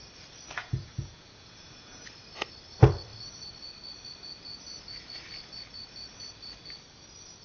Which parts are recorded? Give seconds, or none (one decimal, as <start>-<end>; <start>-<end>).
0.0-0.6; 2.0-7.4